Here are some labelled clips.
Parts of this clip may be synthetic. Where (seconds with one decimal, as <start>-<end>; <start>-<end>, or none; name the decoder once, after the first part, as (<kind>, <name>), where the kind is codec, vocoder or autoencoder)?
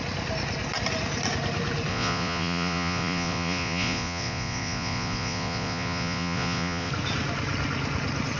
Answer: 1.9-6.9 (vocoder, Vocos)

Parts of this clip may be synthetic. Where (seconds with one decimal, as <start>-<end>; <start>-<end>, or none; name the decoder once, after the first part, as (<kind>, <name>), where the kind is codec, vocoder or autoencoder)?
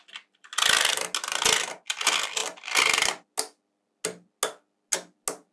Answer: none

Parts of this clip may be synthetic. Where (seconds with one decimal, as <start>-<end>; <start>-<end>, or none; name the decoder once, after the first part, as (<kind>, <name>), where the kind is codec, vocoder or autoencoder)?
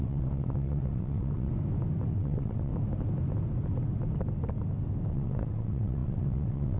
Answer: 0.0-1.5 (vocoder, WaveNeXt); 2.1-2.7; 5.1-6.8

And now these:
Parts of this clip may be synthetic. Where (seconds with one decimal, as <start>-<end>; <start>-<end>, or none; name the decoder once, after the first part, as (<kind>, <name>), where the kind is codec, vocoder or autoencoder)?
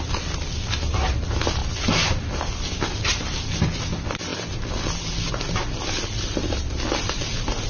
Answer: none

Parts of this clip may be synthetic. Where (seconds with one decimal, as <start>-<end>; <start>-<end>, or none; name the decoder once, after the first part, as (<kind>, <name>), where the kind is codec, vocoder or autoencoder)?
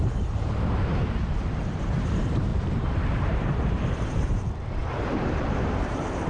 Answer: 0.0-6.3 (vocoder, BigVGAN v2)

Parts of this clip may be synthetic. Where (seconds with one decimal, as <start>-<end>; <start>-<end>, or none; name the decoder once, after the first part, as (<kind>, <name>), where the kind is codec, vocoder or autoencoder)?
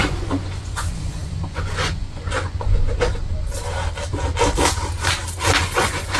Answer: 0.0-3.2 (vocoder, Vocos); 5.6-6.2